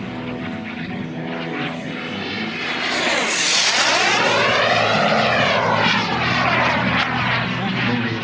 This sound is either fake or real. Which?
real